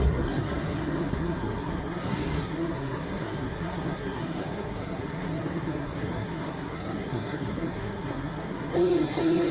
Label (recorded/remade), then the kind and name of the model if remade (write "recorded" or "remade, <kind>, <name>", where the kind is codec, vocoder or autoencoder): remade, codec, SNAC